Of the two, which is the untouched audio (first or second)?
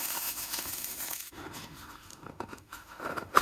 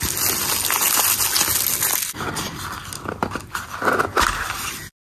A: second